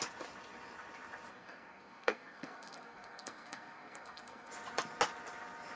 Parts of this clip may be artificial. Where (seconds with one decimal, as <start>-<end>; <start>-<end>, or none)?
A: 1.3-4.5